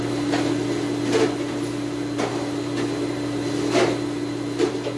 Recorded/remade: recorded